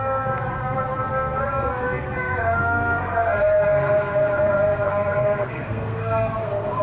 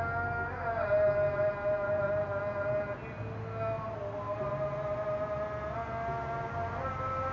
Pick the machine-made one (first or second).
first